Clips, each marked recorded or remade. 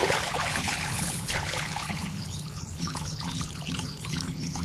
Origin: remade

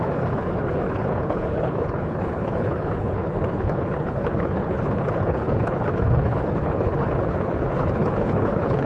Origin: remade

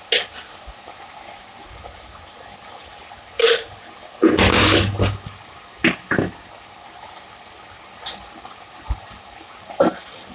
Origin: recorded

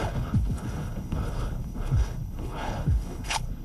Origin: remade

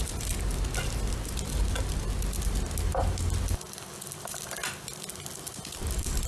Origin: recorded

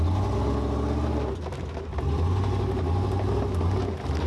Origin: recorded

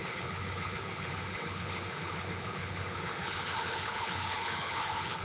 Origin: remade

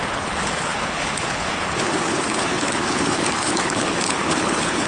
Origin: remade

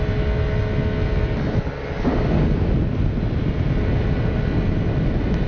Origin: recorded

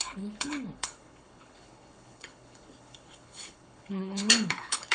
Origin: remade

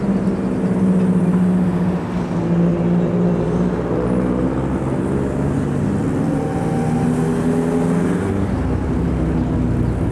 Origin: recorded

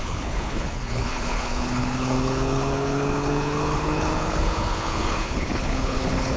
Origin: remade